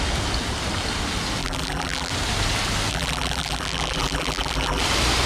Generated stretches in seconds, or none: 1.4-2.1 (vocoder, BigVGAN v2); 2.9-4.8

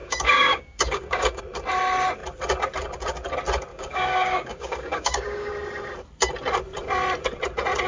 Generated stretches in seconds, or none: 0.0-1.4 (codec, DAC); 3.7-5.5

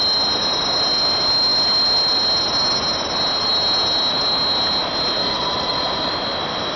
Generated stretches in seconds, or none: 5.2-6.1 (vocoder, Vocos)

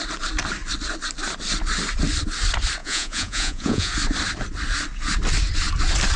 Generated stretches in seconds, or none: 2.8-3.9 (vocoder, Vocos)